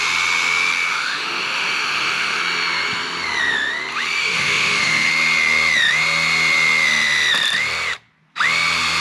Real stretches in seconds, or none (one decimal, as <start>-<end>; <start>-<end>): 0.0-0.9; 2.4-4.2; 5.1-9.0